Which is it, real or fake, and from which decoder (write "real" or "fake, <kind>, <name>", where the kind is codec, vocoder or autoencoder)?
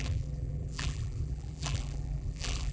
fake, vocoder, BigVGAN v2